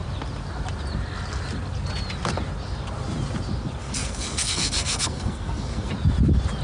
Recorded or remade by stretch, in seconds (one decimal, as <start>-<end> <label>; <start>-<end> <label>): 0.0-3.8 recorded; 3.8-5.9 remade; 5.9-6.6 recorded